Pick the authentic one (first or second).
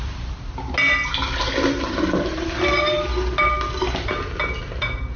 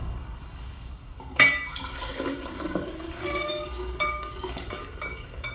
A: first